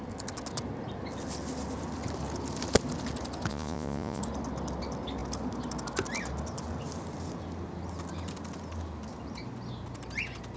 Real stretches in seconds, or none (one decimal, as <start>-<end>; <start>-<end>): 0.0-3.5; 4.2-10.6

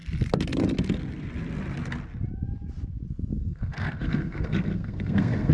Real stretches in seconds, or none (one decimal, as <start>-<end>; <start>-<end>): 0.0-3.3

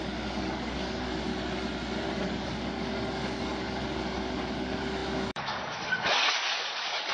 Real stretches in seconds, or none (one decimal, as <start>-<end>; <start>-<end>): 1.3-2.2

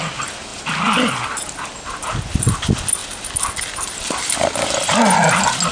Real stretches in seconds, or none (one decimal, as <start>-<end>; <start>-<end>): 0.0-5.7

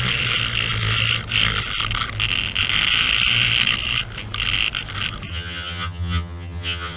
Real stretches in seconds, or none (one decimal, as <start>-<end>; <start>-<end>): 0.0-5.3